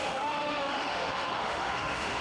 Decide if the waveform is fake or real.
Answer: fake